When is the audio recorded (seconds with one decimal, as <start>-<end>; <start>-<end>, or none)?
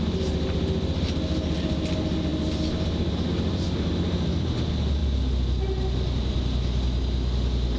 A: 0.0-7.8